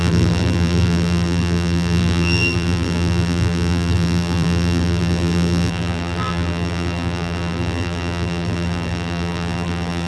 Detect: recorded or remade remade